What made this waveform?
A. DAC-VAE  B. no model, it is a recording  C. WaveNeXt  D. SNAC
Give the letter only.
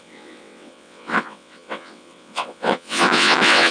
C